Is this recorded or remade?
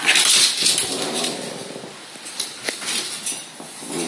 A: recorded